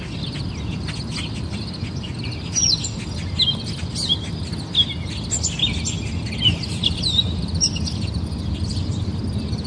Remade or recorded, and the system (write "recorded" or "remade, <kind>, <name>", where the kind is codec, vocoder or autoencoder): recorded